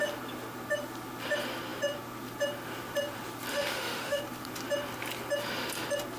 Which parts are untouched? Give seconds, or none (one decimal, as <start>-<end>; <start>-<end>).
0.0-3.5; 4.2-6.2